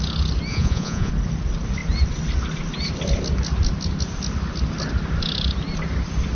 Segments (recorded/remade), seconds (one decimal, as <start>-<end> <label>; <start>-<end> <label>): 0.0-0.5 recorded; 0.5-1.1 remade; 1.1-6.3 recorded

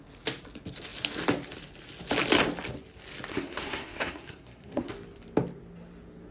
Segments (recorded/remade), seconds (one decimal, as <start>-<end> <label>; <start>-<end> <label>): 0.0-3.3 recorded; 3.3-4.9 remade; 4.9-6.3 recorded

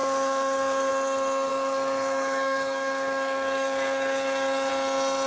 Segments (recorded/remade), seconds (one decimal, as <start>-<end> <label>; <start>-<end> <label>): 0.0-0.9 remade; 0.9-1.5 recorded; 1.5-4.7 remade; 4.7-5.3 recorded

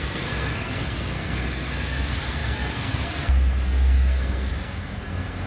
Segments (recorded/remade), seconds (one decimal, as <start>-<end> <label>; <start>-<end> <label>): 0.0-5.5 remade